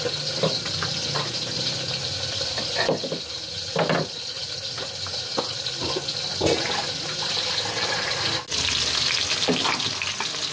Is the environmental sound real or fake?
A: real